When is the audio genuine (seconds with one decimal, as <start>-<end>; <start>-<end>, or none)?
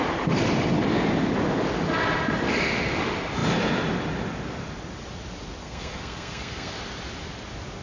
0.0-5.6; 6.8-7.8